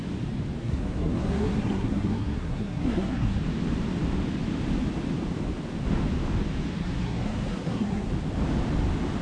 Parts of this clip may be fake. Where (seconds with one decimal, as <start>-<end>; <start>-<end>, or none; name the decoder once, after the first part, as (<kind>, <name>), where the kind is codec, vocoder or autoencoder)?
0.6-3.4 (codec, SNAC); 6.8-8.1